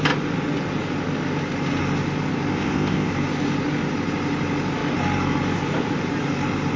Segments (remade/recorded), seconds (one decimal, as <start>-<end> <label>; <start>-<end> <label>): 0.0-2.5 recorded; 2.5-3.1 remade; 3.1-6.8 recorded